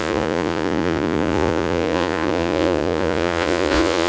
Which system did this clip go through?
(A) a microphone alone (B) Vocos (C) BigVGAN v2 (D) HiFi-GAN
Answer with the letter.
B